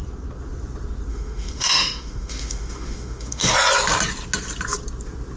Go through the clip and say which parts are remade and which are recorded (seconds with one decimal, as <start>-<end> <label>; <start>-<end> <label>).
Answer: 0.0-1.1 recorded; 1.1-3.5 remade; 3.5-5.4 recorded